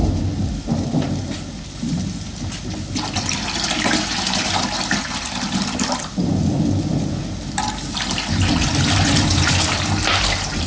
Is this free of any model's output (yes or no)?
yes